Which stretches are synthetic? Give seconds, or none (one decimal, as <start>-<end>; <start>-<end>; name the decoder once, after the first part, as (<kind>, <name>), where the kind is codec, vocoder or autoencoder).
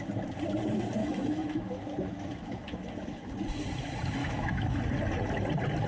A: 1.0-3.3 (autoencoder, DAC-VAE); 4.2-4.8